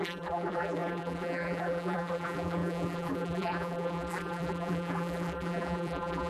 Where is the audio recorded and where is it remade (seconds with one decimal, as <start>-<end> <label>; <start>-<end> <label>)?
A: 0.0-6.3 remade